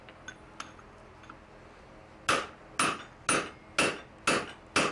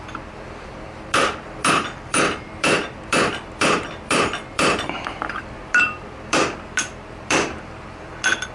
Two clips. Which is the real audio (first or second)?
first